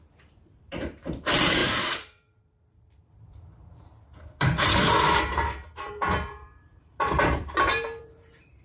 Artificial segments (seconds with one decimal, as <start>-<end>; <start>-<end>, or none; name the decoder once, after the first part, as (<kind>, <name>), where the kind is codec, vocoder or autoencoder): 0.0-8.6 (vocoder, BigVGAN v2)